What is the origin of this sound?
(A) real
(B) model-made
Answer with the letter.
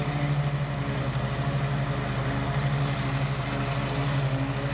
A